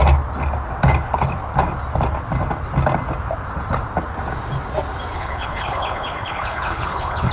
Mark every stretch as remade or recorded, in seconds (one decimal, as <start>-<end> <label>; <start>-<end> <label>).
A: 0.0-5.1 recorded; 5.1-7.3 remade